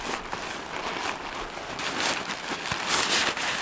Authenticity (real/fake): real